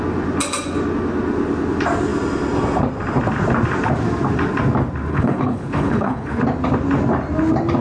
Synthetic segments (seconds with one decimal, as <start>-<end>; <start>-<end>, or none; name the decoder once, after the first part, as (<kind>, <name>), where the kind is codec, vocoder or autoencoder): 5.1-6.4 (codec, HILCodec)